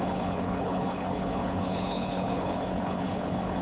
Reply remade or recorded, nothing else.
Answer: remade